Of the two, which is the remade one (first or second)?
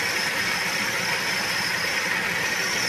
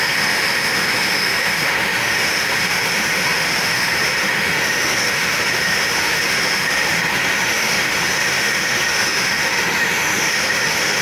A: second